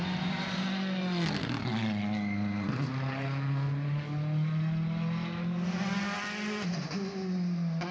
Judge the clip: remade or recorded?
recorded